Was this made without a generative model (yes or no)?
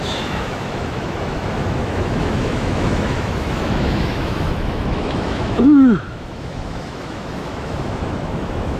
no